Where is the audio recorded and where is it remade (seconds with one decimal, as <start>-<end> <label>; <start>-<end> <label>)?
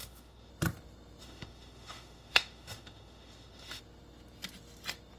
0.0-0.5 remade; 0.5-1.2 recorded; 1.2-3.8 remade; 3.8-5.2 recorded